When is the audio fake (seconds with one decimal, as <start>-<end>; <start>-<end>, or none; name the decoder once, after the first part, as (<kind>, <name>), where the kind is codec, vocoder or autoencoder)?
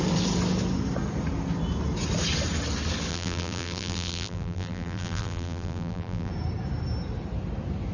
3.1-6.3 (vocoder, BigVGAN v2)